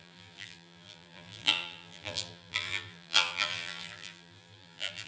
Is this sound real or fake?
fake